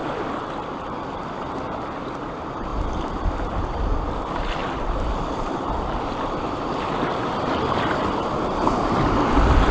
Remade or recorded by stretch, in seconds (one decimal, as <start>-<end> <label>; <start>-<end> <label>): 0.0-4.6 recorded; 4.6-6.2 remade; 6.2-9.7 recorded